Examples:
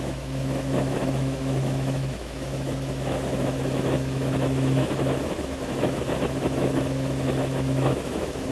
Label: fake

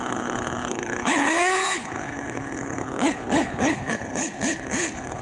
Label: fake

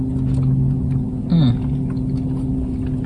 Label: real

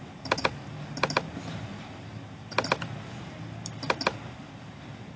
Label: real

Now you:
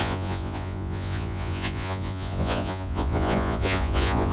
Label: fake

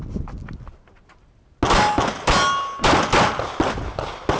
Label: real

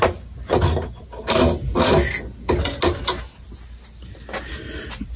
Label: real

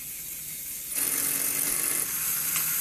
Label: real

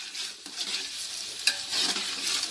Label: real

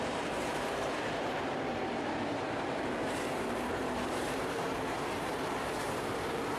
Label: fake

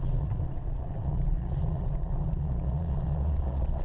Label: fake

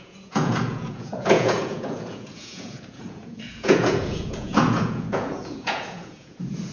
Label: fake